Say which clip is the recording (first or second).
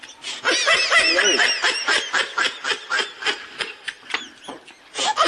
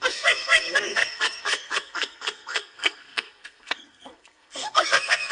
first